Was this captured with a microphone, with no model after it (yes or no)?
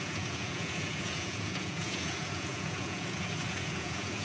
no